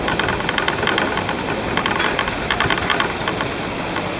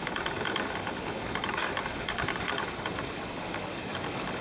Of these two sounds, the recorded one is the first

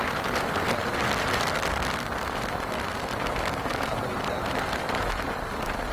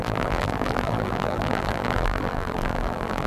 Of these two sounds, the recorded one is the first